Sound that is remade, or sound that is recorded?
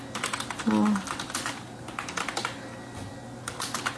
recorded